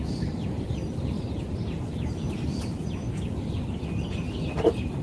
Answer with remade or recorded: recorded